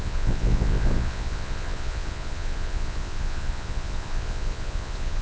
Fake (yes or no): yes